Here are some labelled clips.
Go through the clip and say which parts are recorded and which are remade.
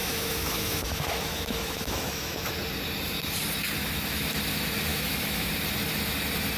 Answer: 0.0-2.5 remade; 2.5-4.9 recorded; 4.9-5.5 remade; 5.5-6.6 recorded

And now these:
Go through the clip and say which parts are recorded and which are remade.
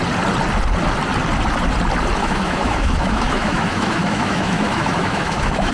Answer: 0.0-2.2 recorded; 2.2-5.7 remade